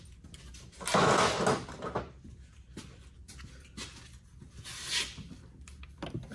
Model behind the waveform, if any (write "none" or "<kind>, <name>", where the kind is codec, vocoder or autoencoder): none